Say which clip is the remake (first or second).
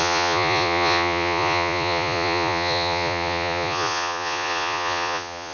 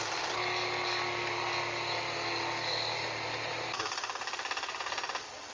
first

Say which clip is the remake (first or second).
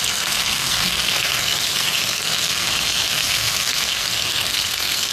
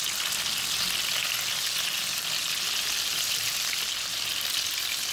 first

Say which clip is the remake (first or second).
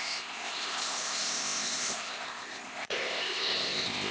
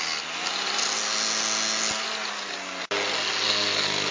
first